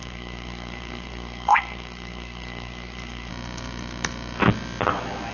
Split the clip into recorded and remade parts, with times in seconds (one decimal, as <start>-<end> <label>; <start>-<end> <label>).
0.0-3.3 remade; 3.3-5.3 recorded